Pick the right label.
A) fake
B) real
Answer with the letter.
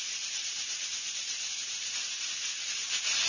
B